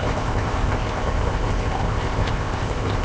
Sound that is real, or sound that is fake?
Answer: fake